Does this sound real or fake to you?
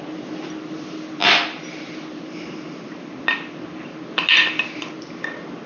real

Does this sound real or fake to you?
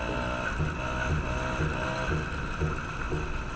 real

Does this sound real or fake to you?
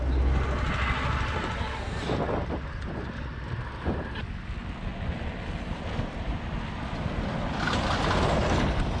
real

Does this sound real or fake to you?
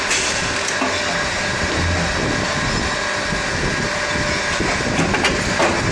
real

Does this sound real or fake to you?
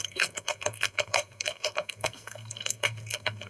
fake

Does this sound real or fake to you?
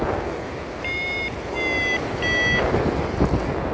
real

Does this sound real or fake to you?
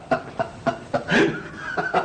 real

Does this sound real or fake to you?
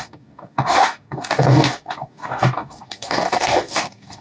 fake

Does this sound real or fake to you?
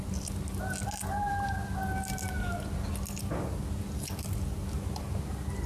real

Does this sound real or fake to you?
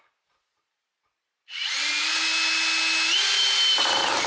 real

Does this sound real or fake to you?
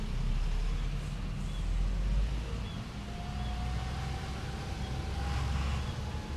real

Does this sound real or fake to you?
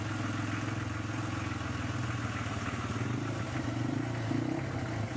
real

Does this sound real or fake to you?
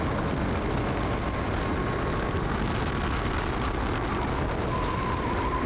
real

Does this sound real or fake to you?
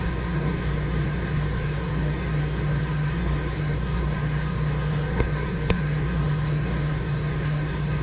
fake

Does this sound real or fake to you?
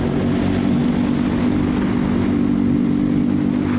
real